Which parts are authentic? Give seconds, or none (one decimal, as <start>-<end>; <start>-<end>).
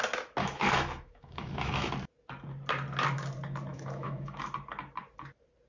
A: 0.0-0.4; 1.9-3.7; 4.4-5.7